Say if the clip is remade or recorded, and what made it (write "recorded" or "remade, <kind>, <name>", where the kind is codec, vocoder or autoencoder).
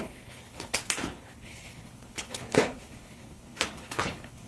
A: remade, codec, HILCodec